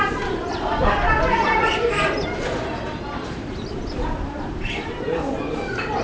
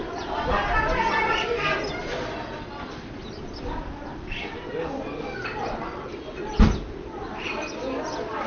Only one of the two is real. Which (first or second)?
second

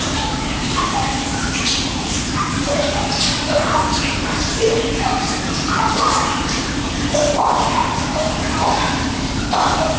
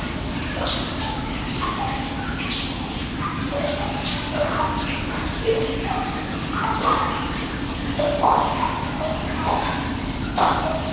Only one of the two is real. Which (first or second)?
second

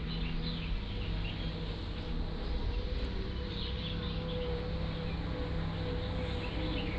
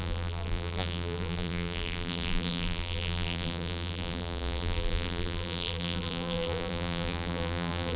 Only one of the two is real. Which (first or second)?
first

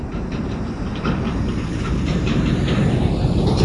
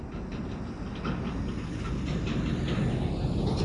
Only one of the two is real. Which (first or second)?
second